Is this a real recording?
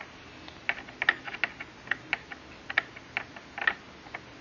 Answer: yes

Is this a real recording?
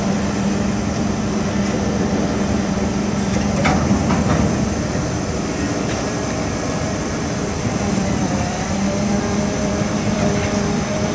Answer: no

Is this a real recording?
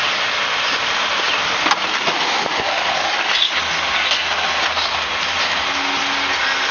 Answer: yes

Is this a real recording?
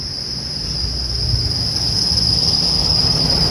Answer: yes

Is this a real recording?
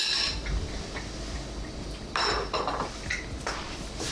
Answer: yes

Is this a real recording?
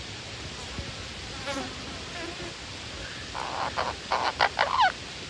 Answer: yes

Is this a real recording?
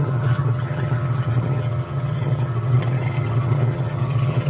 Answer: no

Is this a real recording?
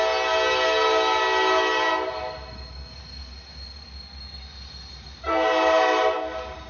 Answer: yes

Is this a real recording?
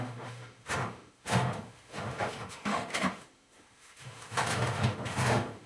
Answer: no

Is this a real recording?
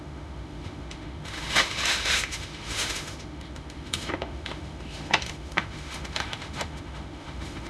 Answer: no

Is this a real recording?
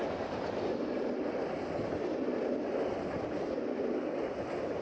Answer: yes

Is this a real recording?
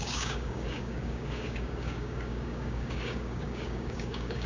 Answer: no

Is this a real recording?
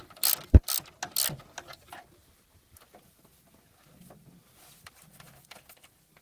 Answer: yes